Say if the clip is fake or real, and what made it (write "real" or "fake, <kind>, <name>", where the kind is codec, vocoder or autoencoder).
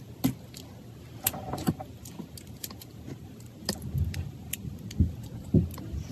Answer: real